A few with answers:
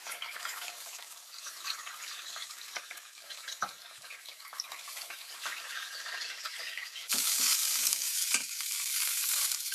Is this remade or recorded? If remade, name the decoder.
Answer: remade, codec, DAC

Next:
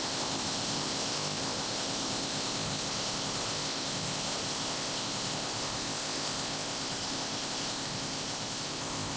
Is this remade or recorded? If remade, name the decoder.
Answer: remade, codec, ZipCodec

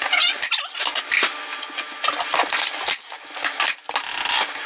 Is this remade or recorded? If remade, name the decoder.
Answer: recorded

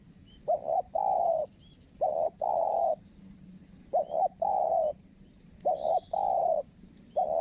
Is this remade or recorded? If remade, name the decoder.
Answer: remade, vocoder, BigVGAN v2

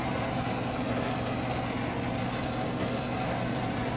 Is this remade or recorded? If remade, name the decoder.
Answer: recorded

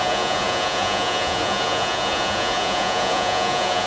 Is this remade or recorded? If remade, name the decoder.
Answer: remade, vocoder, Vocos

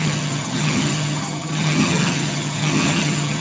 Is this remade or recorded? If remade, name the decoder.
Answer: remade, vocoder, HiFi-GAN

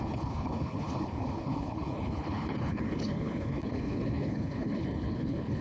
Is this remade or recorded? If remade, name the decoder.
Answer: remade, codec, HILCodec